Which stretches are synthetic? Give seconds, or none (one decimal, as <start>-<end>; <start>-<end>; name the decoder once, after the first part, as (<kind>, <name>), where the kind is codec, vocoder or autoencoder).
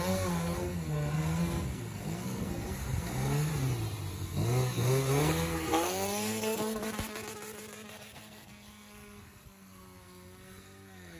0.0-3.5 (codec, SNAC); 4.1-6.8; 7.9-11.2